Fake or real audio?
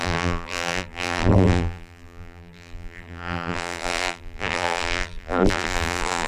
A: fake